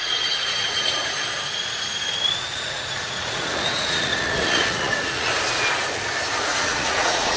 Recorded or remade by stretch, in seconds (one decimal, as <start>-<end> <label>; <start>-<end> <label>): 0.0-1.0 remade; 1.0-2.3 recorded; 2.3-5.3 remade; 5.3-6.4 recorded; 6.4-7.4 remade